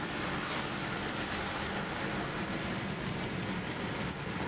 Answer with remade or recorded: recorded